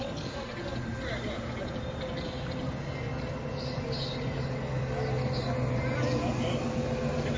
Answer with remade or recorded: recorded